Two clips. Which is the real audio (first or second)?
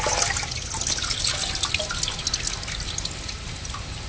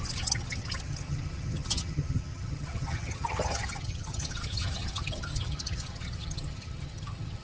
first